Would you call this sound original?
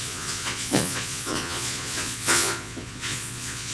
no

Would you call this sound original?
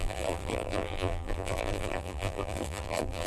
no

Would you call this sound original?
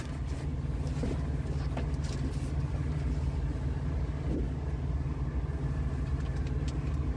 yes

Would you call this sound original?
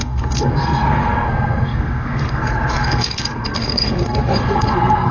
no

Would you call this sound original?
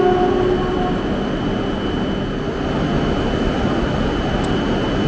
yes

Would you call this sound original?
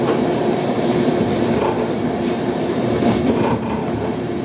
no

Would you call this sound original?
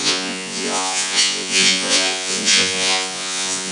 no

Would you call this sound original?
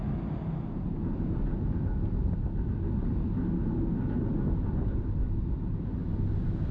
yes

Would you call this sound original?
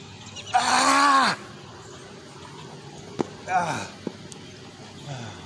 yes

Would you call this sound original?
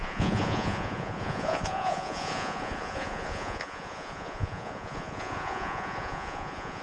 no